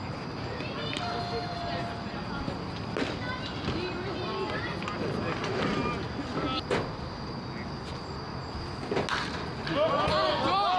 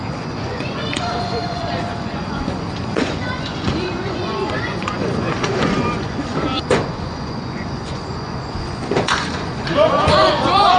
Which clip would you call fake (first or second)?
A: second